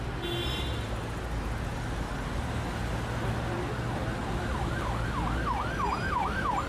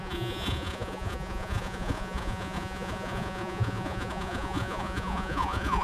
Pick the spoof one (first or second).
second